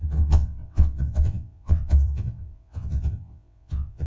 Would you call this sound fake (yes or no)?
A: yes